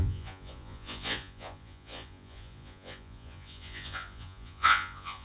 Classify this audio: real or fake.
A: fake